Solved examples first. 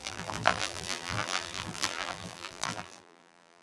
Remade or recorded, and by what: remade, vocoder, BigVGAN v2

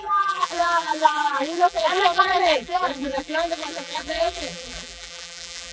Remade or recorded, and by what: remade, vocoder, BigVGAN v2